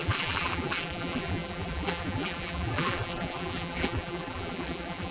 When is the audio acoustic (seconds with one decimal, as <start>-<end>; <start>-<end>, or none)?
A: none